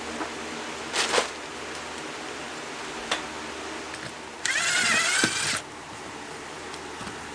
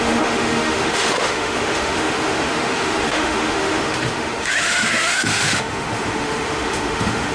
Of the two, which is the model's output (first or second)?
second